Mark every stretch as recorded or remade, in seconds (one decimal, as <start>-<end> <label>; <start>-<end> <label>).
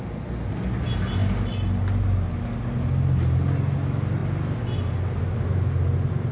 0.0-6.3 recorded